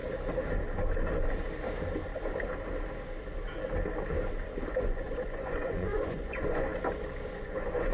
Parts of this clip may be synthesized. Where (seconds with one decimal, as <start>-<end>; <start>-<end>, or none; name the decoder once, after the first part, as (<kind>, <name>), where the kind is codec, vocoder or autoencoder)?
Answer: 4.7-6.7 (vocoder, Vocos); 7.3-7.9

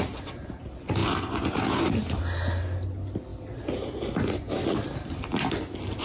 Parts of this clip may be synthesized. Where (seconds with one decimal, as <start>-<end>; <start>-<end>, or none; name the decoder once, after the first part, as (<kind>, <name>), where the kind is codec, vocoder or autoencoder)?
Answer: none

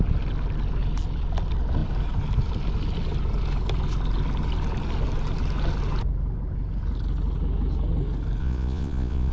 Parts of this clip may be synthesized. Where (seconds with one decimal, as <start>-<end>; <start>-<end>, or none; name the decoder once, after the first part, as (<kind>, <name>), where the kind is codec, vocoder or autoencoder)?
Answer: 8.4-9.3 (vocoder, Vocos)

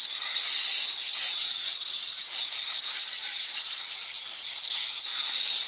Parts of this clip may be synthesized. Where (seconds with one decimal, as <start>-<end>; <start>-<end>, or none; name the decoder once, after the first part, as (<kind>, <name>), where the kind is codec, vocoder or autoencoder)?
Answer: none

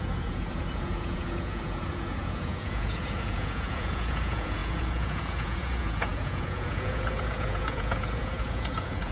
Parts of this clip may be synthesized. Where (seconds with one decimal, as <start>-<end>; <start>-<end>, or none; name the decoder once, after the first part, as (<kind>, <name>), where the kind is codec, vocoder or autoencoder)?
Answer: 0.0-9.1 (vocoder, Vocos)

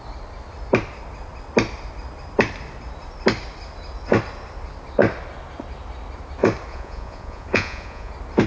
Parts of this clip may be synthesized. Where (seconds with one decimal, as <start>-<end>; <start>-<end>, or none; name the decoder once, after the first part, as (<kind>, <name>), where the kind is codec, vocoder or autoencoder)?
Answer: 6.7-8.1 (vocoder, Vocos)

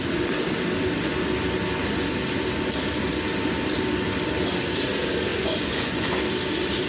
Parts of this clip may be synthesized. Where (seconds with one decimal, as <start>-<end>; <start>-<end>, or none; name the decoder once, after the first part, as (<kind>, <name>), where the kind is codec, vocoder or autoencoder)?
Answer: 5.3-6.1 (vocoder, Vocos)

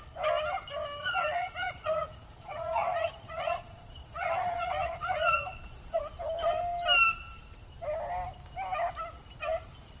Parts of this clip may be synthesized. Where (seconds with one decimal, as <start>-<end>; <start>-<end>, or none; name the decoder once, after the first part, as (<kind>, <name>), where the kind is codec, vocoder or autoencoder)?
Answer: 1.0-6.0 (vocoder, Vocos)